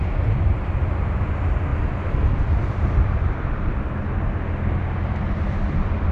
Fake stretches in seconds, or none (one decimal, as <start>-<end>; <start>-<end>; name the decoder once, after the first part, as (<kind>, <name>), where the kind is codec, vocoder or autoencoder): 0.0-6.1 (vocoder, BigVGAN v2)